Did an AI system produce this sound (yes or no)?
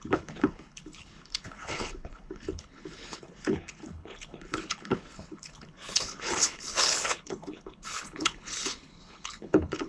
yes